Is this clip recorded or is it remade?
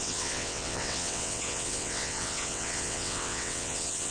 remade